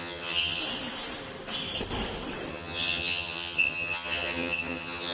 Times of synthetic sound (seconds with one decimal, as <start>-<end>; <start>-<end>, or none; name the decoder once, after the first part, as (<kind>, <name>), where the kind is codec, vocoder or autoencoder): 0.0-0.6 (vocoder, HiFi-GAN); 2.5-5.1